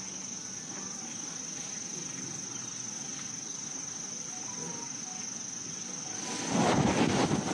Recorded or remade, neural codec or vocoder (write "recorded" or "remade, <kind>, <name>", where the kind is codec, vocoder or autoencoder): recorded